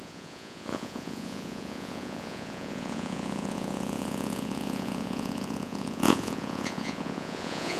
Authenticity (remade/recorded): remade